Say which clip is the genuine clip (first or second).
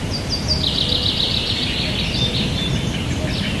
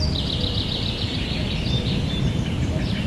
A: first